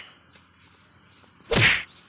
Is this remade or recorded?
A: recorded